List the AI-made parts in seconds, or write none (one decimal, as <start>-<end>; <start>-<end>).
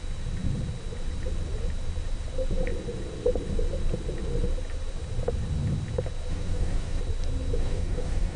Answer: 6.3-7.0; 7.6-8.4